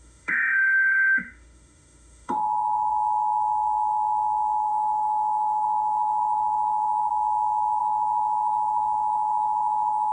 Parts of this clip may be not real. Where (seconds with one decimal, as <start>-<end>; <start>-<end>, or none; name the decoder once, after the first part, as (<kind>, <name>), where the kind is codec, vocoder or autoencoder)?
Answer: 0.0-2.9 (autoencoder, DAC-VAE); 4.7-7.1; 7.8-10.1